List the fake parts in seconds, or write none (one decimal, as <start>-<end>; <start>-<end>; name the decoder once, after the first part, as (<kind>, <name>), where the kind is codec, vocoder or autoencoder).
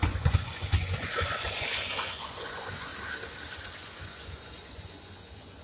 0.0-2.9 (vocoder, Vocos); 3.6-5.6